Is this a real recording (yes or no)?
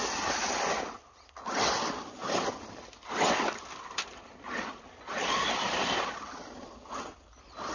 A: yes